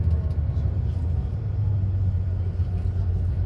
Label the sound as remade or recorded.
recorded